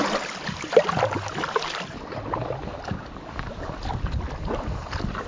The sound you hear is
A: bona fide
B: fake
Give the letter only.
A